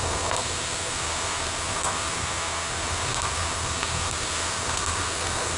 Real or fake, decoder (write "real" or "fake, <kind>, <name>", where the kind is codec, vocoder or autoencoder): fake, codec, SNAC